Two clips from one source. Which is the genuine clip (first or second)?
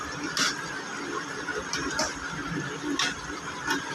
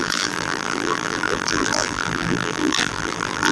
first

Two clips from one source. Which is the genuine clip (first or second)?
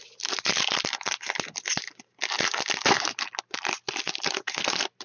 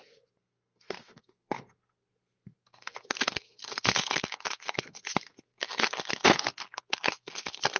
first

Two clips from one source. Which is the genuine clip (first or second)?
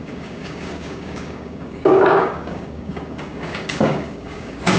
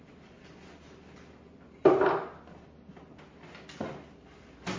second